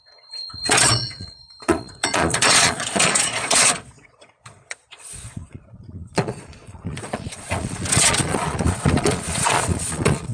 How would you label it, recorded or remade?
remade